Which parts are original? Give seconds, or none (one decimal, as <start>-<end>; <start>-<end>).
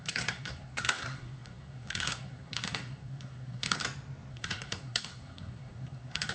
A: 3.8-4.3